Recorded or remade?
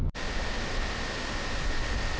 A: recorded